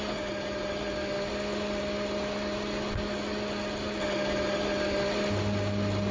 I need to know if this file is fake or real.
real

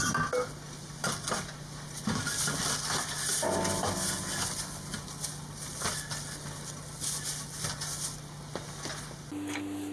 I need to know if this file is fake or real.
real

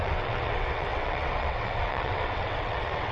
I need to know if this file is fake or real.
fake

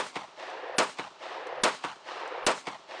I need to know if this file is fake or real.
real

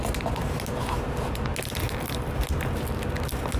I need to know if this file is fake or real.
real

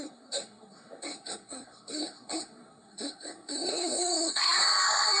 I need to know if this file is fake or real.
fake